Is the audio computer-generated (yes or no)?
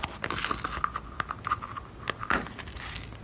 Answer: no